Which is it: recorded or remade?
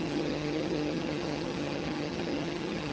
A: remade